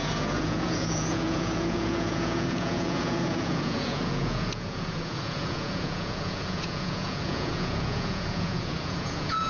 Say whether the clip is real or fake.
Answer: fake